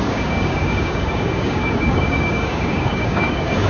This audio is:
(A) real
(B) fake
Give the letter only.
B